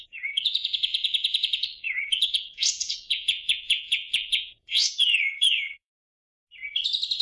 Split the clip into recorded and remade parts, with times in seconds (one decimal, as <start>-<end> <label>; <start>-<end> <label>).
0.0-5.9 remade; 5.9-7.2 recorded